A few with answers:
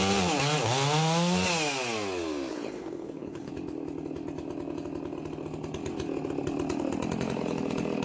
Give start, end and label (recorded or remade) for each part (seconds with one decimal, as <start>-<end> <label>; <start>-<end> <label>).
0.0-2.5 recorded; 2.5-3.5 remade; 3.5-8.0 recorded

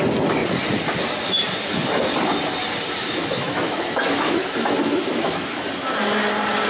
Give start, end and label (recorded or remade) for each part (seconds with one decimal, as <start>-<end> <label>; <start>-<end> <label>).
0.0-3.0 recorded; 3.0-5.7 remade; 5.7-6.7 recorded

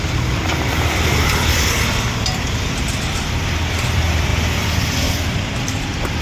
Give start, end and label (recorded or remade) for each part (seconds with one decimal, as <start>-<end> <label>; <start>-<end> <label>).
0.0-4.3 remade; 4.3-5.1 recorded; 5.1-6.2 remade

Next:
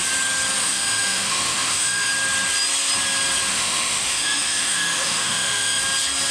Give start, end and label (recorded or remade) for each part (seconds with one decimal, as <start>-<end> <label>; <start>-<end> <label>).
0.0-0.6 recorded; 0.6-2.1 remade; 2.1-3.5 recorded; 3.5-5.8 remade; 5.8-6.3 recorded